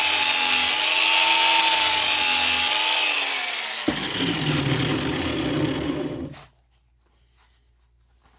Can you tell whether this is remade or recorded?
recorded